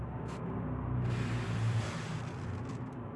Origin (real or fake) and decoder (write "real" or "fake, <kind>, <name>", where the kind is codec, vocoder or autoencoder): fake, vocoder, BigVGAN v2